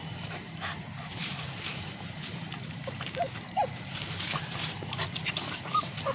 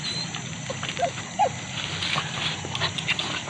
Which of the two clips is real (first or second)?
second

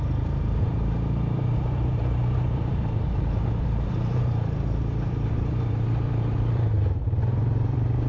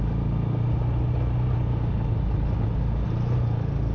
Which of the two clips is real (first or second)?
second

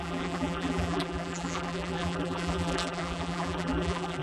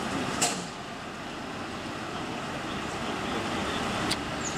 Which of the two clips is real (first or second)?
second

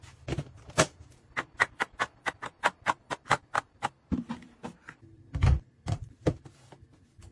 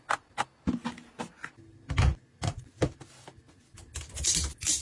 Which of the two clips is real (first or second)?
second